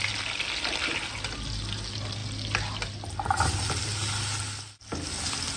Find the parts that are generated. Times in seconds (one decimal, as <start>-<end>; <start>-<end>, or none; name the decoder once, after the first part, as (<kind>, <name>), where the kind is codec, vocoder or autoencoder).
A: none